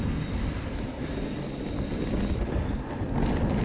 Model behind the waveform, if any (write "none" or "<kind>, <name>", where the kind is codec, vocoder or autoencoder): none